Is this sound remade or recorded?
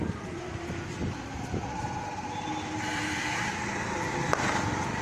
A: recorded